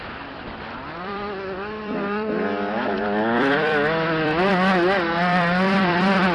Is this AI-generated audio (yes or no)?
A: yes